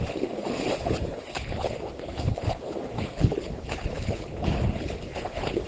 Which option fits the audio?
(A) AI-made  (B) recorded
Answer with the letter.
A